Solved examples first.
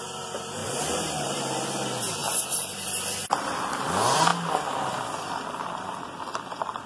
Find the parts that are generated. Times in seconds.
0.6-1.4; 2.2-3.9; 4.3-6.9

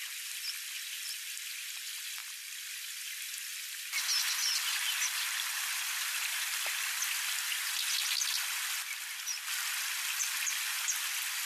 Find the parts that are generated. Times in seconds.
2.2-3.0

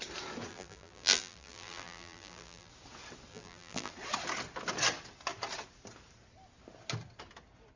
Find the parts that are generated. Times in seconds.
0.5-2.7; 3.3-3.9

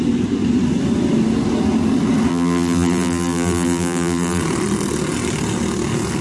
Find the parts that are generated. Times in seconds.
2.3-4.4

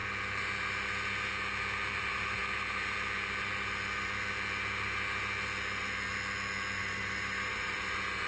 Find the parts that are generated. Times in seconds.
1.9-2.4; 6.8-8.3

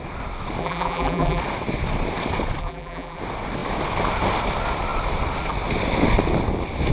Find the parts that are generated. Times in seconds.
0.6-1.4; 2.6-3.2

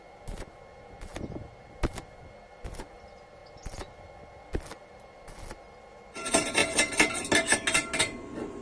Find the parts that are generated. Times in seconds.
none